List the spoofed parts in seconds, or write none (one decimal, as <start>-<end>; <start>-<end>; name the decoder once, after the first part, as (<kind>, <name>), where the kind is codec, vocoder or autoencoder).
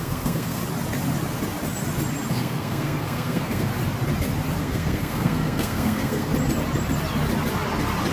0.0-0.6 (codec, SNAC); 2.3-3.7; 4.6-6.3